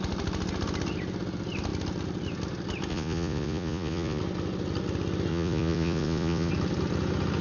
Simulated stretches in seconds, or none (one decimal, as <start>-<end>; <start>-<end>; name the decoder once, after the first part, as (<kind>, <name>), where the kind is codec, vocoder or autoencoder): 2.9-4.2 (vocoder, Vocos); 5.3-6.5